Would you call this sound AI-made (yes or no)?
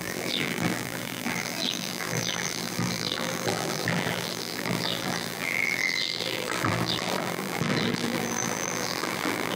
yes